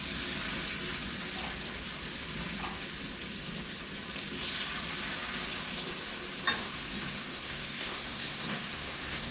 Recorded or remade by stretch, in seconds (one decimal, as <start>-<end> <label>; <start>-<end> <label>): 0.0-6.6 recorded; 6.6-9.3 remade